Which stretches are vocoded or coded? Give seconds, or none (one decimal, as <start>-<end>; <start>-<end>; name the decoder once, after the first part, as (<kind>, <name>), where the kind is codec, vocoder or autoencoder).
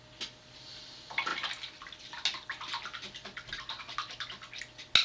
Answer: none